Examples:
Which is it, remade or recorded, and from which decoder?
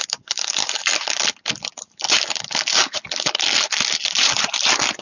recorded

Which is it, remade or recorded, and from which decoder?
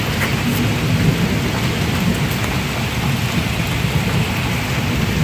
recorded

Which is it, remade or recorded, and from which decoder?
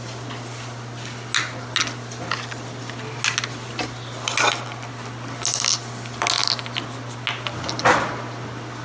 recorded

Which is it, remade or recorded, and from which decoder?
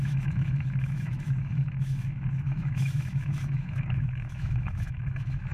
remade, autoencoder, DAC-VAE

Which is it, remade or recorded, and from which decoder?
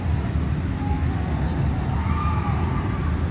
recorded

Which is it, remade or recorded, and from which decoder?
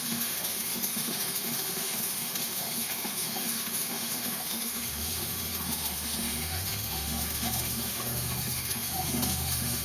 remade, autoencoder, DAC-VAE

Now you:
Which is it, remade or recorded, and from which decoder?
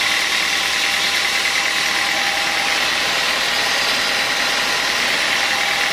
recorded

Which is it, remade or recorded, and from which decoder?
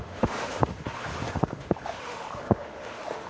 remade, autoencoder, DAC-VAE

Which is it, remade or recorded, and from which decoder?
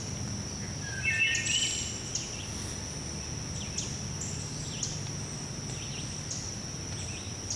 recorded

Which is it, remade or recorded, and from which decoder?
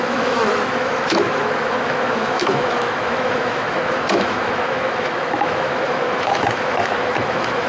remade, autoencoder, DAC-VAE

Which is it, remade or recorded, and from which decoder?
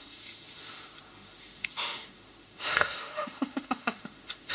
remade, autoencoder, DAC-VAE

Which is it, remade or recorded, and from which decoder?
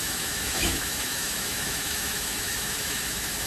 remade, autoencoder, DAC-VAE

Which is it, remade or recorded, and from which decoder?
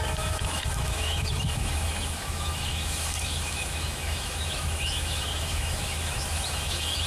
remade, autoencoder, DAC-VAE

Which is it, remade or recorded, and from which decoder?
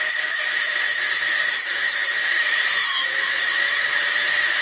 remade, autoencoder, DAC-VAE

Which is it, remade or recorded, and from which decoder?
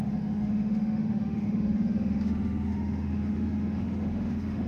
remade, autoencoder, DAC-VAE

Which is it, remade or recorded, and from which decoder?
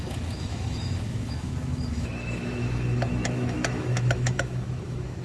remade, autoencoder, DAC-VAE